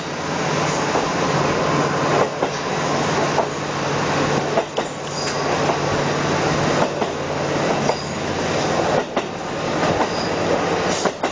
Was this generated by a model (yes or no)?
no